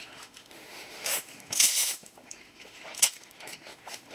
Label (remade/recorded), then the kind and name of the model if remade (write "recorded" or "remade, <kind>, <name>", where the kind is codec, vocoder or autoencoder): remade, autoencoder, DAC-VAE